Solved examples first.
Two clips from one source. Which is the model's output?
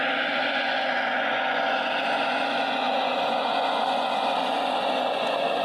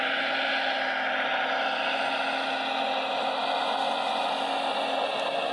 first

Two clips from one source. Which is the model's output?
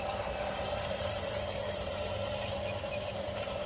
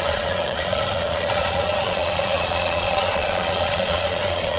second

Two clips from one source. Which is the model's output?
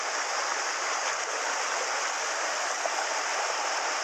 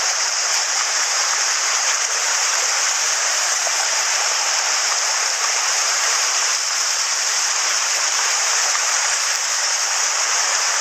second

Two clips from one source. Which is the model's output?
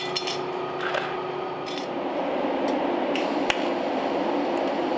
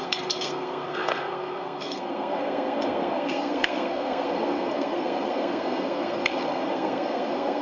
second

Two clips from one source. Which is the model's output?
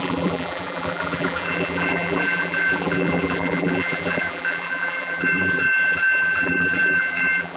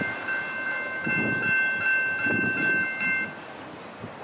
first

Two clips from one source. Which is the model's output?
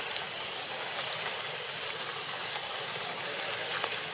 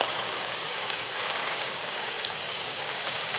second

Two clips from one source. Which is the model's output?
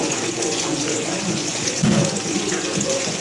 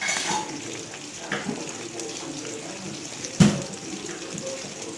first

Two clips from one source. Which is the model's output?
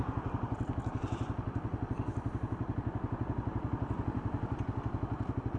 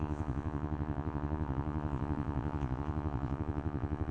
second